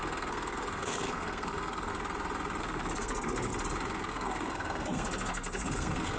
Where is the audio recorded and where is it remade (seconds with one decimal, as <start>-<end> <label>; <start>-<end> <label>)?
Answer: 0.0-1.9 remade; 1.9-2.6 recorded; 2.6-3.5 remade; 3.5-4.1 recorded; 4.1-6.2 remade